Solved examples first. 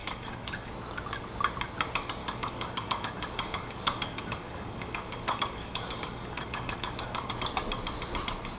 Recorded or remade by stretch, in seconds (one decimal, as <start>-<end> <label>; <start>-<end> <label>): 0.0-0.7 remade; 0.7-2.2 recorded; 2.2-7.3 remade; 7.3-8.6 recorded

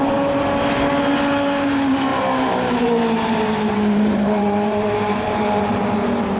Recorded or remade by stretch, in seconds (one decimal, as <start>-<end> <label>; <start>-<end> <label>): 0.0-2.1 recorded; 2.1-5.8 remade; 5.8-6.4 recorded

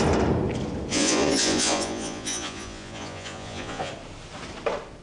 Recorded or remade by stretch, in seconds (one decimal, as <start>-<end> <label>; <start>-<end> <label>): 0.0-0.9 recorded; 0.9-3.9 remade; 3.9-5.0 recorded

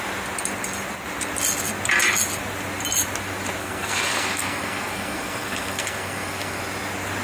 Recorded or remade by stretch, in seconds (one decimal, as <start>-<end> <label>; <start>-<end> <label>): 0.0-3.6 recorded; 3.6-6.6 remade; 6.6-7.2 recorded

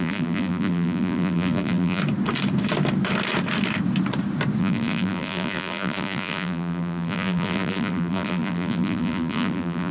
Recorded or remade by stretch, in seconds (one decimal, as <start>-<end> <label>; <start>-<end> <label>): 0.0-2.0 remade; 2.0-4.6 recorded; 4.6-9.9 remade